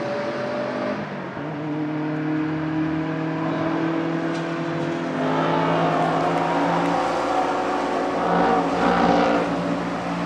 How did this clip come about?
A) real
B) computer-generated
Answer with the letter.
A